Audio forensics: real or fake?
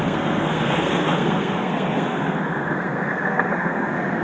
fake